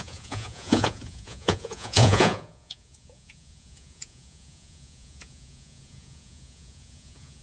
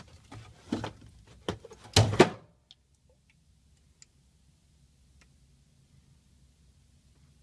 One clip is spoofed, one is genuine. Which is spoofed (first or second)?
first